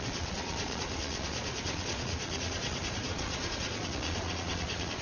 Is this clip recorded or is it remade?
remade